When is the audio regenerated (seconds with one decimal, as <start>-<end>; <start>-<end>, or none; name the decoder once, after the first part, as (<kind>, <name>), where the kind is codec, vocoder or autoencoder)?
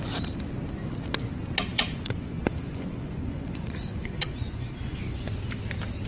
1.7-5.4 (vocoder, Vocos)